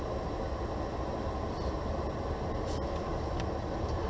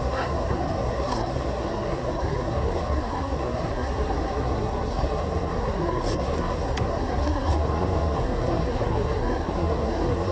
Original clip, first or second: first